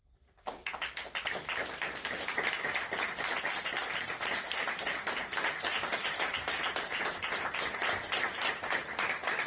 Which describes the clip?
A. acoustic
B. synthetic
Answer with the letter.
A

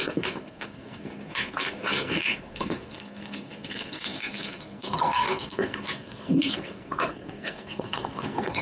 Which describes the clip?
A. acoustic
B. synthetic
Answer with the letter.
B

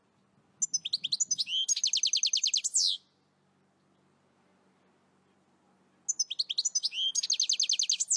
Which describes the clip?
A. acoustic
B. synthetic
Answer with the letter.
A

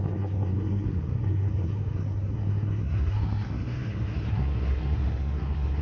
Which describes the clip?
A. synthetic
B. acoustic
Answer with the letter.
A